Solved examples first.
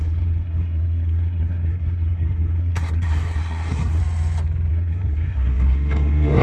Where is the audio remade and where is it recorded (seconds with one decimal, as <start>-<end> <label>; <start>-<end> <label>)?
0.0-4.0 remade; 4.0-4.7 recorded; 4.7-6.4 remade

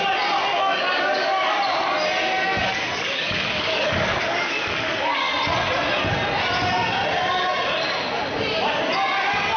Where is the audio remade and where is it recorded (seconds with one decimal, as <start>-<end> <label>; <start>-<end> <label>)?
0.0-0.4 recorded; 0.4-1.5 remade; 1.5-2.6 recorded; 2.6-5.3 remade; 5.3-9.6 recorded

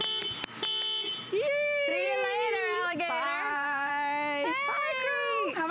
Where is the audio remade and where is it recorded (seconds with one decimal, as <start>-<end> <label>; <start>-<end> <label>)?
0.0-1.9 recorded; 1.9-3.9 remade; 3.9-5.0 recorded; 5.0-5.7 remade

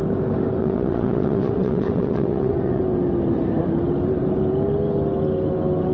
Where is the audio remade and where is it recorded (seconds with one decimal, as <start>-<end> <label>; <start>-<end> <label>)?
0.0-0.6 recorded; 0.6-2.8 remade; 2.8-5.9 recorded

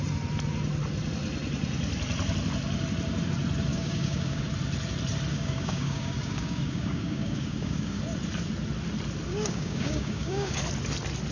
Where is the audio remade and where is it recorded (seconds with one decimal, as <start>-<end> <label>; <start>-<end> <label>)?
0.0-3.7 recorded; 3.7-4.4 remade; 4.4-5.3 recorded; 5.3-8.0 remade; 8.0-9.3 recorded; 9.3-10.6 remade; 10.6-11.3 recorded

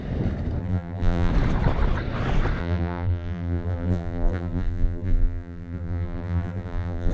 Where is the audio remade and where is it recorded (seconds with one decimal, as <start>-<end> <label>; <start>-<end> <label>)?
0.0-0.6 recorded; 0.6-1.3 remade; 1.3-2.6 recorded; 2.6-7.1 remade